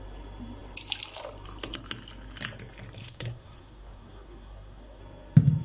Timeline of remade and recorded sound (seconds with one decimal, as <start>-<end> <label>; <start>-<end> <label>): 0.0-3.0 recorded; 3.0-5.0 remade; 5.0-5.6 recorded